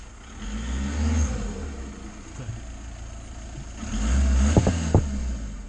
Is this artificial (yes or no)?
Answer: no